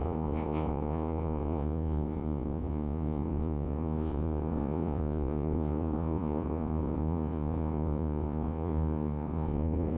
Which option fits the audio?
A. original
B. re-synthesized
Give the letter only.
B